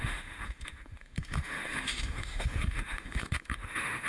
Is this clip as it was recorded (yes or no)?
no